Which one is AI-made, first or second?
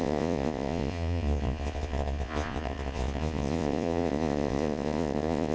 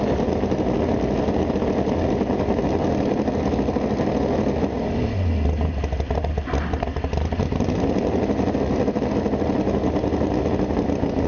first